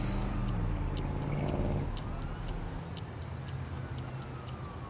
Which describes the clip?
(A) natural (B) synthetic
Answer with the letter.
A